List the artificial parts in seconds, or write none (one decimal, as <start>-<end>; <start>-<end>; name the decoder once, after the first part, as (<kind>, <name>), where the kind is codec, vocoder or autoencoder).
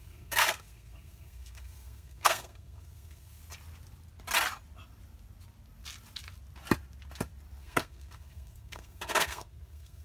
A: 0.0-3.4 (codec, SNAC); 7.6-10.0